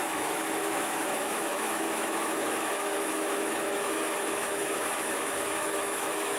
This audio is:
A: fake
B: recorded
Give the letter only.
A